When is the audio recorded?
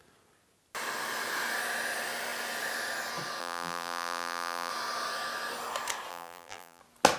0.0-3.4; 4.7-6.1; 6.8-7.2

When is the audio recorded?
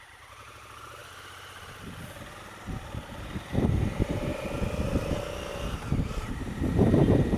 1.0-2.4; 4.3-5.5